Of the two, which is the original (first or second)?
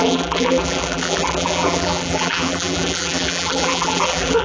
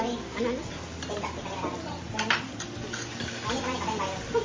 second